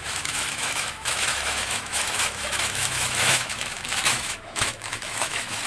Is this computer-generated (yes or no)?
yes